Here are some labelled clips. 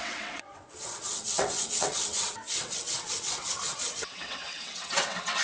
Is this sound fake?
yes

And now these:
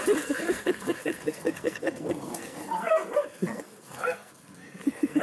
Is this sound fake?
yes